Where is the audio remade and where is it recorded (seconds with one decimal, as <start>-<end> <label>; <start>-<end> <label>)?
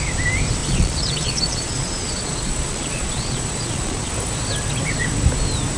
0.0-0.6 recorded; 0.6-4.1 remade; 4.1-5.8 recorded